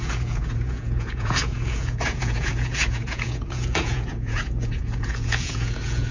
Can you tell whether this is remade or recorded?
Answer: remade